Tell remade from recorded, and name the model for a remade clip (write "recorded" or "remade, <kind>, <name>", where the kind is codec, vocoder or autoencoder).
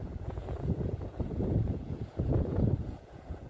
remade, vocoder, Vocos